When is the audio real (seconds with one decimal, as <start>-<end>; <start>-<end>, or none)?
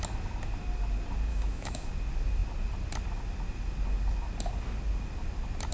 0.0-1.3; 1.9-5.7